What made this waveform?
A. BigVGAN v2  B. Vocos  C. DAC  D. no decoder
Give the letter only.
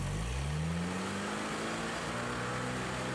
D